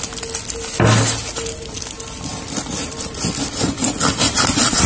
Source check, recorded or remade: recorded